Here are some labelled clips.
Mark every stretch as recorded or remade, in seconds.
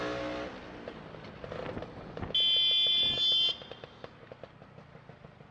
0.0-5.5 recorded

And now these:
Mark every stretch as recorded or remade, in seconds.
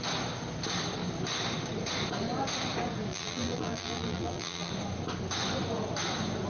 0.0-3.1 recorded; 3.1-4.7 remade; 4.7-6.5 recorded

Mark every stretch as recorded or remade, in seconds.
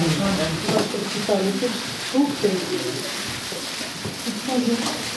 0.0-5.2 recorded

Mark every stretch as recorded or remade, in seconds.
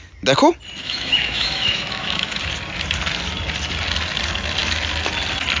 0.0-0.8 recorded; 0.8-2.4 remade; 2.4-5.6 recorded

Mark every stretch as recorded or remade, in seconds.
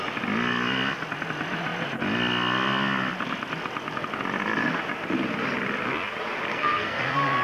0.0-6.5 recorded; 6.5-7.0 remade; 7.0-7.4 recorded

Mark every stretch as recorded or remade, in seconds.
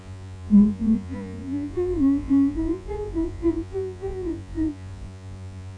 0.0-5.8 remade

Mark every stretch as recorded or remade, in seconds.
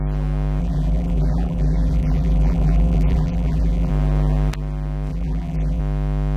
0.0-0.6 recorded; 0.6-3.9 remade; 3.9-5.1 recorded; 5.1-5.8 remade; 5.8-6.4 recorded